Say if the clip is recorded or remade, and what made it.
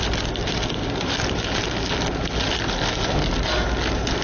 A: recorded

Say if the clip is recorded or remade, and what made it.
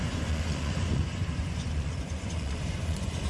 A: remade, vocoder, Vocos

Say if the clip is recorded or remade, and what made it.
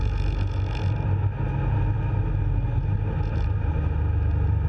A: recorded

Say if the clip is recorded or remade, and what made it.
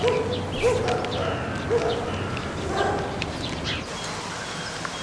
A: recorded